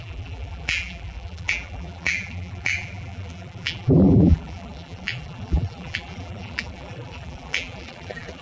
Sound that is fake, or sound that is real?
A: fake